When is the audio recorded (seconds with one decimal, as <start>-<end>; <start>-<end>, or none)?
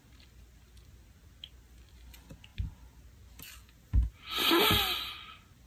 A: 0.0-5.7